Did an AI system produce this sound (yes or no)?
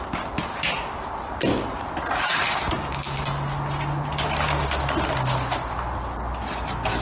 no